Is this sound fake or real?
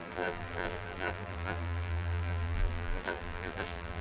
fake